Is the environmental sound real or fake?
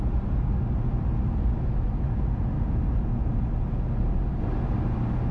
real